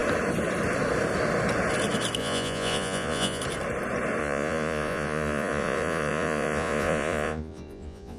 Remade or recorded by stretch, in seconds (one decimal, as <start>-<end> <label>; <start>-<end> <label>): 0.0-2.2 recorded; 2.2-3.4 remade; 3.4-4.2 recorded; 4.2-8.2 remade